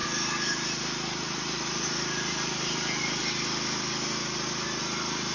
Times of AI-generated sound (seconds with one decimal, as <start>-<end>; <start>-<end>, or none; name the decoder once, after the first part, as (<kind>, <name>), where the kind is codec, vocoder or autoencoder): 0.0-3.2 (vocoder, BigVGAN v2)